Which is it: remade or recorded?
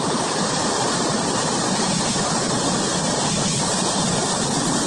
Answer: recorded